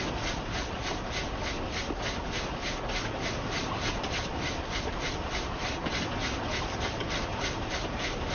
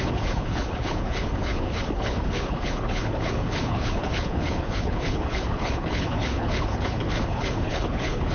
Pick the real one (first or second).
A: first